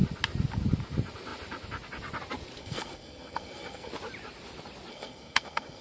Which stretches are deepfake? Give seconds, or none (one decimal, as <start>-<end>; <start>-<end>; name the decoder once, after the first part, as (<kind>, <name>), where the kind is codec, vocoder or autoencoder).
2.6-3.9 (codec, SNAC); 4.9-5.8